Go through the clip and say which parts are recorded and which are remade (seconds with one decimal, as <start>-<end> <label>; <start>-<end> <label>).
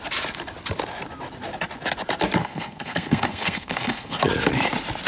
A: 0.0-2.4 recorded; 2.4-4.2 remade; 4.2-5.1 recorded